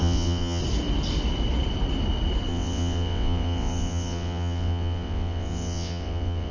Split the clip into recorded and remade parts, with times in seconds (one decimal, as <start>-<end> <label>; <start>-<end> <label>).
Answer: 0.0-0.6 remade; 0.6-2.5 recorded; 2.5-6.5 remade